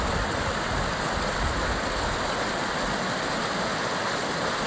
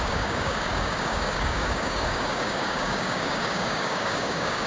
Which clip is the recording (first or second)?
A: first